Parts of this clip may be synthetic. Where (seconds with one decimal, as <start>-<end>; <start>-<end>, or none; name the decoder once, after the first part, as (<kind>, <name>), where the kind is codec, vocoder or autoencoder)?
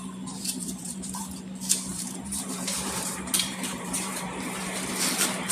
0.4-1.3 (vocoder, BigVGAN v2); 1.9-4.9